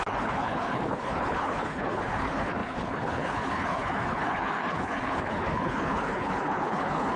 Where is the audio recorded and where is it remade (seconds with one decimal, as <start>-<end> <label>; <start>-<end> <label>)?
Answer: 0.0-7.2 remade